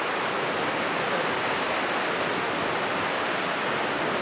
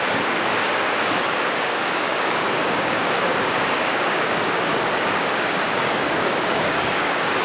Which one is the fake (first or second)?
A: second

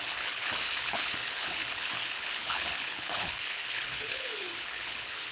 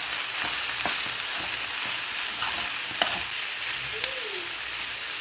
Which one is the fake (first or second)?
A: first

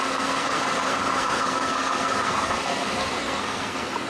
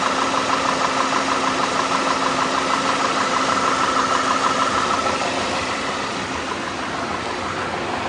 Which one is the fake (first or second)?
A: first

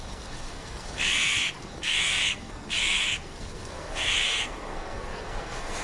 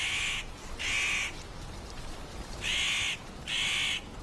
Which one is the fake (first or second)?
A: first